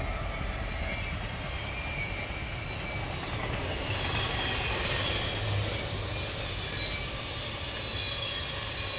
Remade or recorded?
recorded